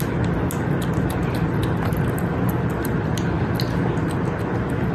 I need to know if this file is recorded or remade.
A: recorded